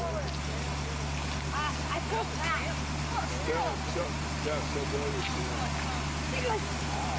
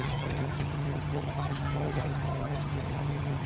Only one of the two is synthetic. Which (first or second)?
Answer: second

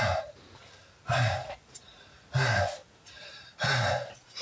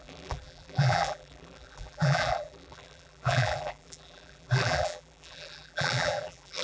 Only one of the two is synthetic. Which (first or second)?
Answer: second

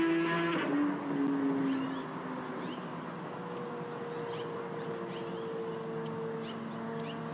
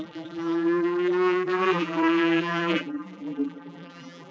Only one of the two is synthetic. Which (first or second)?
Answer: second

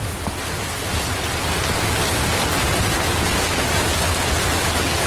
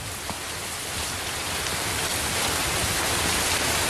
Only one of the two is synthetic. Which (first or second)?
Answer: second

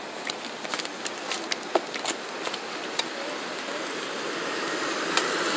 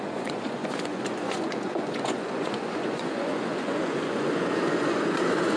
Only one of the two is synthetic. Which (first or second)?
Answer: second